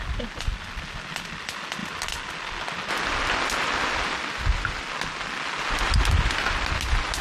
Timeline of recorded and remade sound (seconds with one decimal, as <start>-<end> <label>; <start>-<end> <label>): 0.0-7.2 recorded